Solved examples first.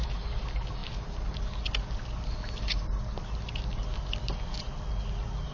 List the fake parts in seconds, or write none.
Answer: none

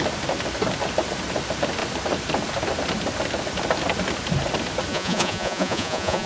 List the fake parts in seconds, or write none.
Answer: 4.9-6.3 (vocoder, Vocos)